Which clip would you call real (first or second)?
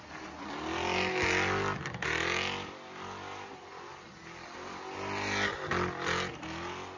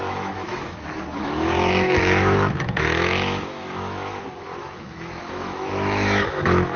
first